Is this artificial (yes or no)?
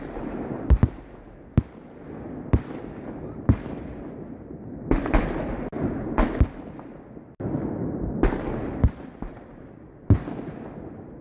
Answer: no